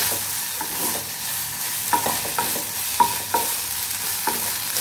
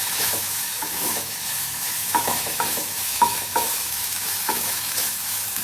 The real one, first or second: first